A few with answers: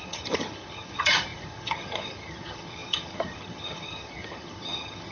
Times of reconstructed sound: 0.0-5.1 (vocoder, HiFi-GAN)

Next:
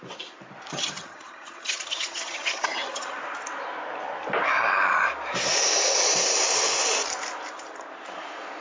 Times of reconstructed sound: 0.7-3.2 (vocoder, HiFi-GAN)

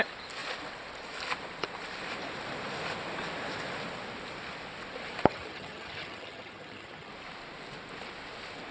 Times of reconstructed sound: 5.3-7.1 (vocoder, HiFi-GAN)

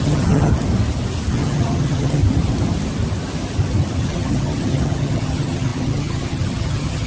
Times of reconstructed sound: 0.0-0.5 (vocoder, HiFi-GAN); 1.3-2.2; 4.0-7.1

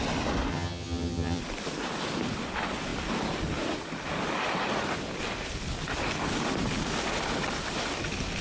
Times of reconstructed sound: 0.5-1.4 (vocoder, HiFi-GAN)

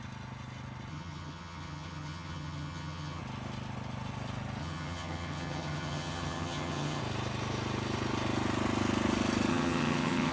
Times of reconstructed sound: 0.9-3.2 (vocoder, HiFi-GAN); 4.6-7.0; 9.5-10.3

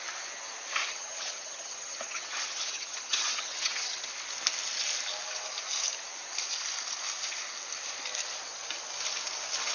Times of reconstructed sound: 0.9-4.1 (vocoder, HiFi-GAN)